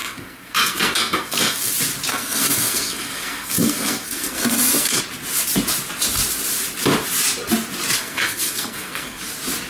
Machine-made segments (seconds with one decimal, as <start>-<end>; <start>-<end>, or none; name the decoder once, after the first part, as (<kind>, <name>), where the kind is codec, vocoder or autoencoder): 0.0-1.7 (codec, SNAC); 2.1-5.0; 8.0-9.2